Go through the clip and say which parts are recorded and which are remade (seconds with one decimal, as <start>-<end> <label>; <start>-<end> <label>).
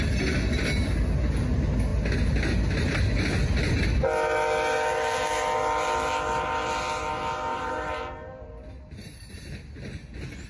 0.0-7.5 recorded; 7.5-8.7 remade; 8.7-10.5 recorded